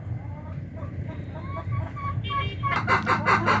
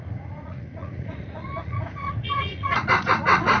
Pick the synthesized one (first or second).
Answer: second